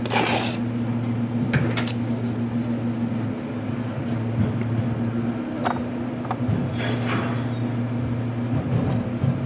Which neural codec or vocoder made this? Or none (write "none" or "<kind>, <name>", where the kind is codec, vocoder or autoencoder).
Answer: none